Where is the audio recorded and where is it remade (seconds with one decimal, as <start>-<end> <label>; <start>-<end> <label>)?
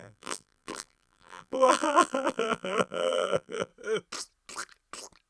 0.0-3.7 remade; 3.7-5.3 recorded